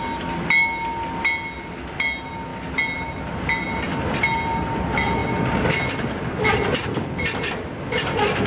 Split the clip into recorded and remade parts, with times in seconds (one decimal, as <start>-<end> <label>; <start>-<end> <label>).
0.0-8.5 recorded